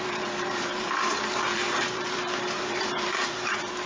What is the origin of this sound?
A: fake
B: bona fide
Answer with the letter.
A